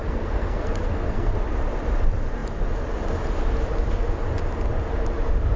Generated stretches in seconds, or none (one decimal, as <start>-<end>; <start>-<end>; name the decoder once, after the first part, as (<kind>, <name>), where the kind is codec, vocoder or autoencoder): 0.0-1.3 (codec, SNAC)